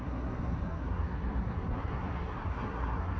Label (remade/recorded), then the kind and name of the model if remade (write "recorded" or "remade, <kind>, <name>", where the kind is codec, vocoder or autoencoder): remade, codec, SNAC